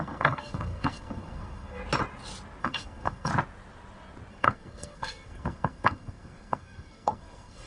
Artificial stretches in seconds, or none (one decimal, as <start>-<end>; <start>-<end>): 0.0-1.8; 2.6-3.3; 4.3-7.7